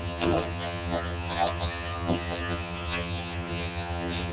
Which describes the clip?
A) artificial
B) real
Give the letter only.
A